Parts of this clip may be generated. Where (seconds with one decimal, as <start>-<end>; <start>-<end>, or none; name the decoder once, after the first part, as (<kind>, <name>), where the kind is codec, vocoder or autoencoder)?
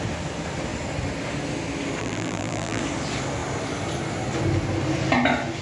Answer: 2.0-2.8 (vocoder, BigVGAN v2)